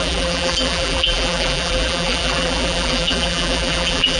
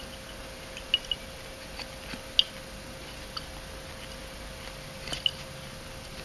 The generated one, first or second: first